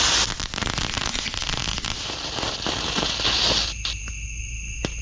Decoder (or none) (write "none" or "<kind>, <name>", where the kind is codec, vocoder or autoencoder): none